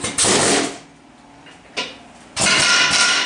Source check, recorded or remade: recorded